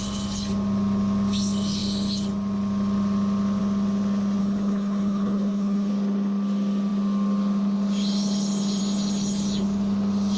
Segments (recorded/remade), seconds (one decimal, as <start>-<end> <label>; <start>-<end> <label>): 0.0-4.4 recorded; 4.4-5.9 remade; 5.9-10.4 recorded